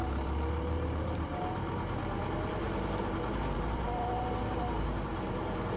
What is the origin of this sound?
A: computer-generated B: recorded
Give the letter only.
A